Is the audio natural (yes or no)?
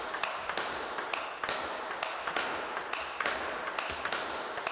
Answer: yes